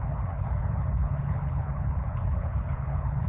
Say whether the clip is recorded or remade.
remade